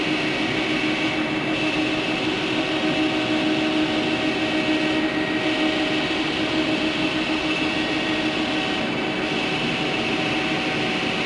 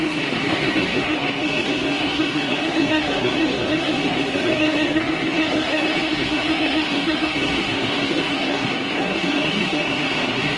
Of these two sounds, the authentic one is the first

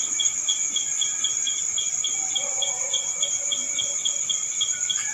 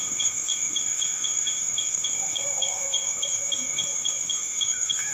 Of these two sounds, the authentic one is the first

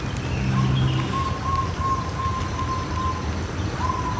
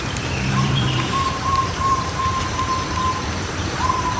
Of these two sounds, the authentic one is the first